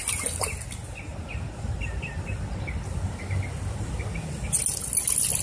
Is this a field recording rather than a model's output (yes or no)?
yes